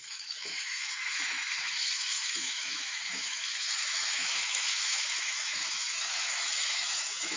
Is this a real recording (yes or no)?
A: no